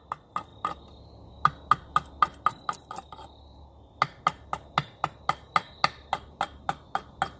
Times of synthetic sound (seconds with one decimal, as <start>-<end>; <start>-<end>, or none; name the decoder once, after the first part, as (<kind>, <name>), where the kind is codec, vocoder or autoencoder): none